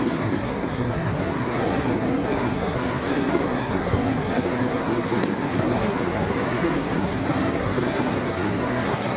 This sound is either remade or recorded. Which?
remade